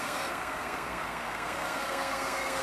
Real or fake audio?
fake